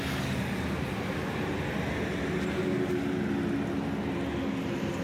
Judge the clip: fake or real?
real